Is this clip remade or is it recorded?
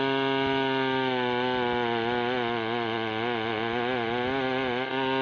recorded